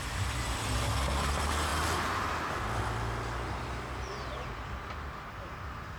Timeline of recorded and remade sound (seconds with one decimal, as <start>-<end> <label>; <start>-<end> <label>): 0.0-6.0 recorded